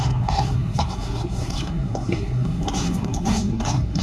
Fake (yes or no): yes